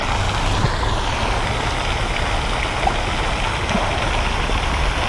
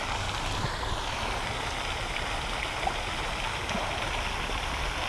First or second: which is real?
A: first